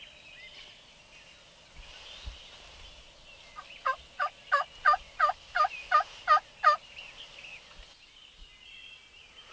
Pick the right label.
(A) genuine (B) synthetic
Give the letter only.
A